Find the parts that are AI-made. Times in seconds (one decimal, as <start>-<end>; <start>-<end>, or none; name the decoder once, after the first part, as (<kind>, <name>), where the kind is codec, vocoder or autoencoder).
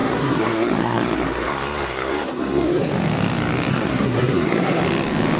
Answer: 0.0-2.9 (codec, SNAC); 3.7-4.8